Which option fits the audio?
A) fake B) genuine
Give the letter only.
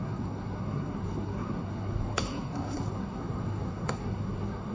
A